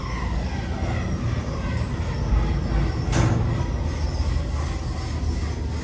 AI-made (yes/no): no